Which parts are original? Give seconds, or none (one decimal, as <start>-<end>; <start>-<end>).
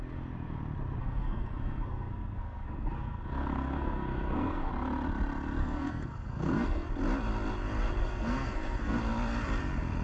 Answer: 0.0-1.0; 4.7-5.6; 6.9-8.0; 9.0-10.0